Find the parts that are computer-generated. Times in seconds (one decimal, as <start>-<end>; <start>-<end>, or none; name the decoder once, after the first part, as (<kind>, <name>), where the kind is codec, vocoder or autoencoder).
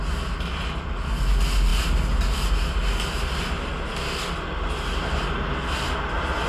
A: none